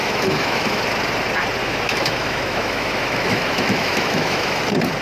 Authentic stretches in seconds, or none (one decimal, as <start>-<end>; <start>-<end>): 0.8-1.6; 4.6-5.0